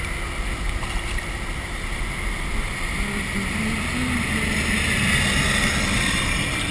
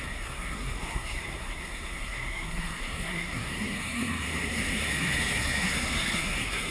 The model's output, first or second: second